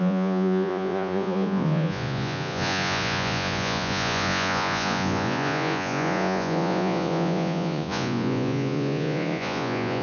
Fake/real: fake